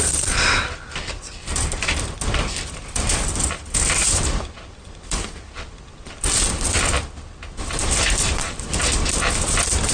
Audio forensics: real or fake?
fake